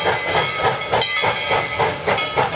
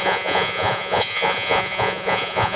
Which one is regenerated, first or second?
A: second